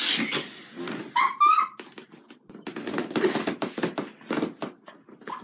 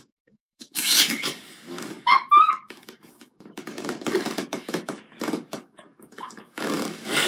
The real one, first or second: first